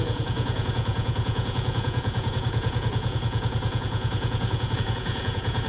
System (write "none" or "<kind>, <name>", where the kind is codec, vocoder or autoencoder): vocoder, Vocos